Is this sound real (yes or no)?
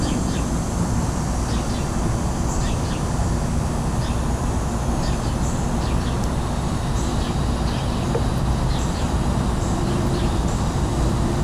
yes